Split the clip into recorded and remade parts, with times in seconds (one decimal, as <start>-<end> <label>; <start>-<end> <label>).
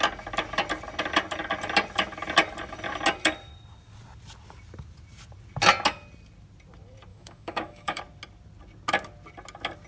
0.0-7.1 recorded; 7.1-8.0 remade; 8.0-9.9 recorded